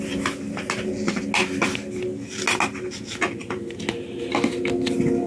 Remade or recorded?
recorded